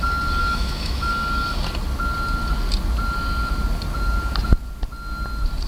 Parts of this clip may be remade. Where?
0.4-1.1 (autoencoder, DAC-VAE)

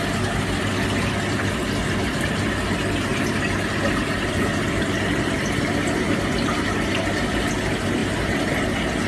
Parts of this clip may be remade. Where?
1.8-2.3 (vocoder, BigVGAN v2); 8.0-8.5